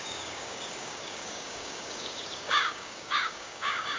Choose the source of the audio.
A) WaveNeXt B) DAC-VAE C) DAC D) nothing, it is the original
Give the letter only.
C